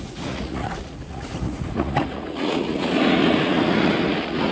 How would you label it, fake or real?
fake